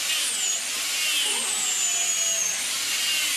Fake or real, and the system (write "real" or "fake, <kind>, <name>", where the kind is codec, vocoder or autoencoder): real